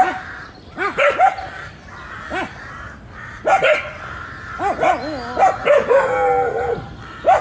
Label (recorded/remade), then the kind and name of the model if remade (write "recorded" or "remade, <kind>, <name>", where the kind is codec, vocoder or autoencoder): recorded